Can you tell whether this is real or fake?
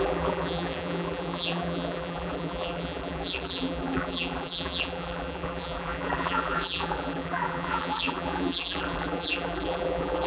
fake